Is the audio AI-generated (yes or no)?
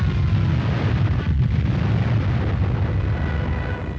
no